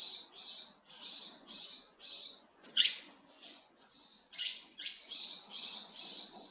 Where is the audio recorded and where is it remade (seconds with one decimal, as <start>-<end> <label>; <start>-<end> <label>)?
0.0-0.4 remade; 0.4-1.4 recorded; 1.4-6.5 remade